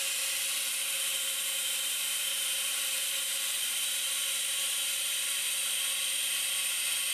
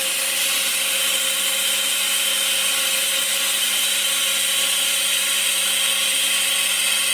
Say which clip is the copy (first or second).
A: first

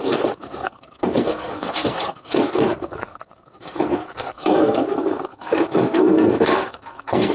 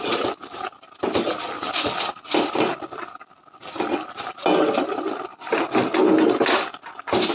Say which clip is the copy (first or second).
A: first